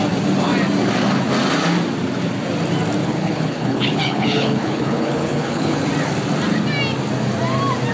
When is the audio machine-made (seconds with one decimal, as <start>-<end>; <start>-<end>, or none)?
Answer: 3.0-5.8